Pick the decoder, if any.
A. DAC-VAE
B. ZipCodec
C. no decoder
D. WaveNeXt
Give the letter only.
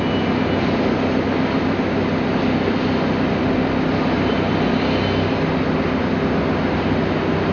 C